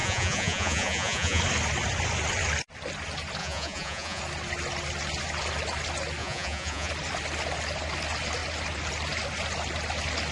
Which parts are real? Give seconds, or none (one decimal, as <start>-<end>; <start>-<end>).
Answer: 1.4-3.4; 4.2-6.2; 6.9-10.3